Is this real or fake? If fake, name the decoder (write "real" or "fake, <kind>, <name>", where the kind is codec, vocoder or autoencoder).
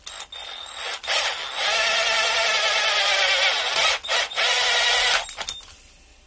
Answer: real